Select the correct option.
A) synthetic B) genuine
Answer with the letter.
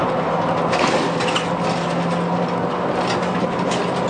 B